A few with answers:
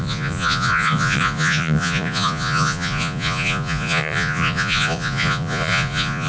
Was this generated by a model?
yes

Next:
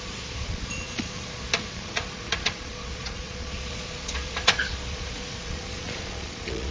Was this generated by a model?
yes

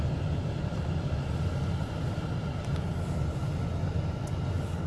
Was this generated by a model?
no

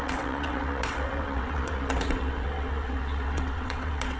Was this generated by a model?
yes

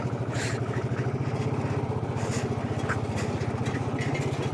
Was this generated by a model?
no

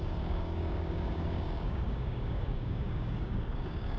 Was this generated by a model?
yes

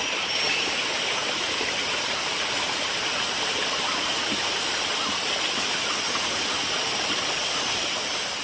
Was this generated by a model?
no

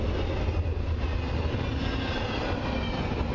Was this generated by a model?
no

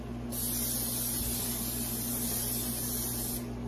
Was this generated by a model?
no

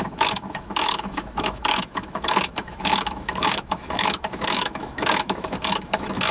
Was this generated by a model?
yes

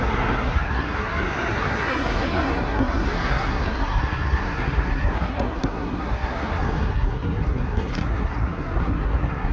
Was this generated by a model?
yes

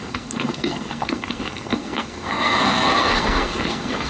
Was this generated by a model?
yes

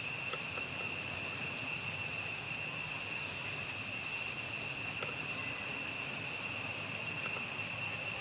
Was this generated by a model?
no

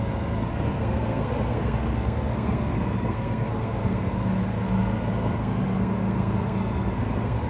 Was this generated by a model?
yes